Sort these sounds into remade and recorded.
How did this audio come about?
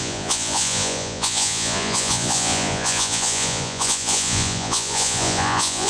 remade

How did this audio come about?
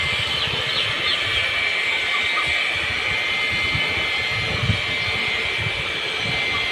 recorded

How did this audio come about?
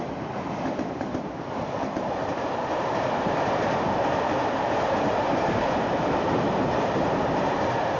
remade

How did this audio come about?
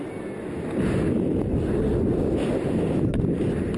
recorded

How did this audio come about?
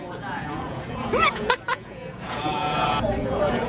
remade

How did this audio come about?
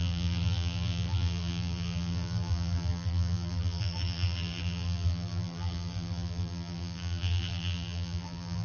remade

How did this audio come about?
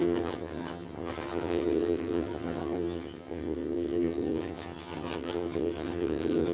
remade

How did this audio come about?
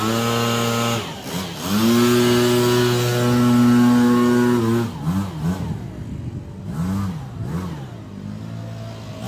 recorded